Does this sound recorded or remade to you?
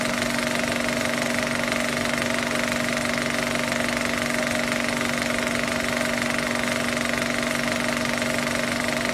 recorded